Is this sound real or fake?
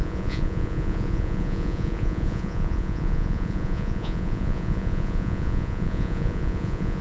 fake